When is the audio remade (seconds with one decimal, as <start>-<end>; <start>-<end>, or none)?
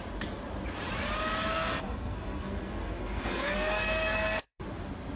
1.5-4.6